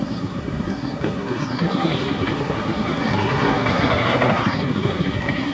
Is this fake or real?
fake